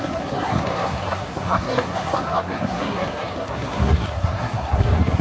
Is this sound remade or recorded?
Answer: remade